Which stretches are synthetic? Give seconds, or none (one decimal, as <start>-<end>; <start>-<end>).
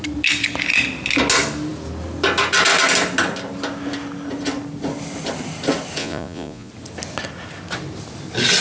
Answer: 6.0-6.7